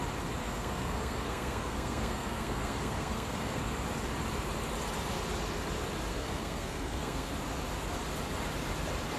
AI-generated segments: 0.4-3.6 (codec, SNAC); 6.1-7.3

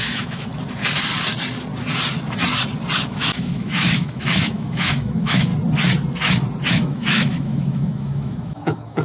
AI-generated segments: 0.0-0.5 (autoencoder, DAC-VAE); 3.0-5.5; 6.7-9.0

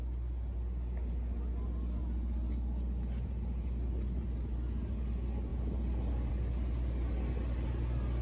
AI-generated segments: none

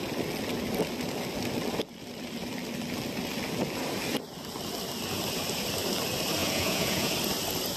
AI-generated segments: 6.4-7.1 (vocoder, Vocos)

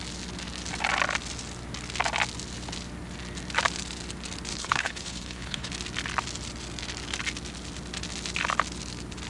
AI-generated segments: 4.5-5.7 (codec, HILCodec)

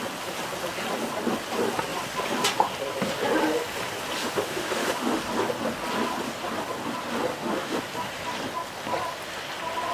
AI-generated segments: 4.2-5.2 (autoencoder, DAC-VAE); 7.3-7.8